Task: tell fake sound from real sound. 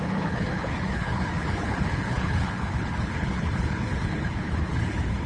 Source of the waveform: fake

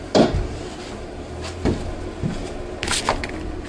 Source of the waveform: real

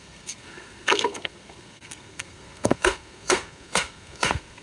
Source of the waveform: fake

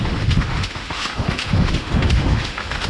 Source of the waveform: fake